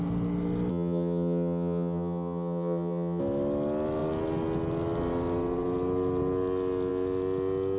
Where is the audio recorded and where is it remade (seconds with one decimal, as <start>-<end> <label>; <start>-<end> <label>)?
0.0-0.7 recorded; 0.7-3.2 remade; 3.2-7.8 recorded